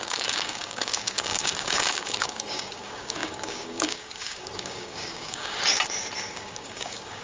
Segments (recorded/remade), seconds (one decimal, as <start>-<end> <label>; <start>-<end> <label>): 0.0-5.6 remade; 5.6-6.3 recorded; 6.3-7.2 remade